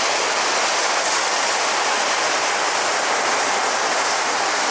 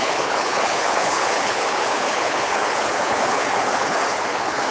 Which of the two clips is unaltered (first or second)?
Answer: first